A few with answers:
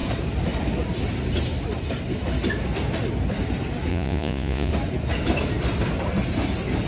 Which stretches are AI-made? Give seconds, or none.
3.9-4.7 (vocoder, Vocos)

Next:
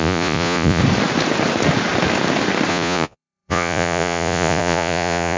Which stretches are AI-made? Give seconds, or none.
0.0-0.8 (vocoder, Vocos); 2.7-5.4

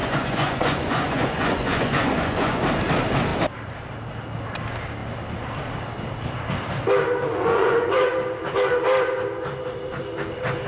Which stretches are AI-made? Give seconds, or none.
0.0-2.6 (vocoder, Vocos); 7.3-8.1